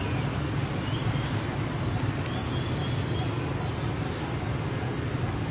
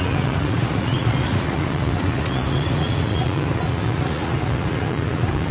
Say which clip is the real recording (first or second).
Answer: first